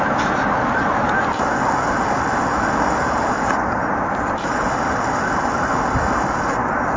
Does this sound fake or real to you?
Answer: real